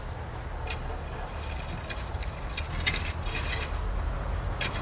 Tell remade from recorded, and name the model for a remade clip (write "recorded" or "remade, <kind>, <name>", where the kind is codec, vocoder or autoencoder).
recorded